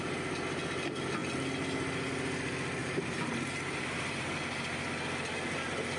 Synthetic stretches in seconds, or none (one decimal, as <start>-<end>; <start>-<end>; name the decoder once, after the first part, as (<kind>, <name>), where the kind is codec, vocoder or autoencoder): 2.8-4.4 (vocoder, BigVGAN v2)